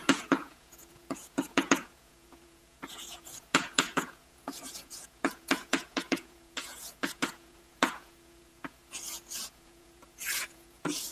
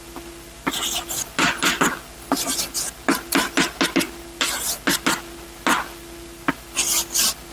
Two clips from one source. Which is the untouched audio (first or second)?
second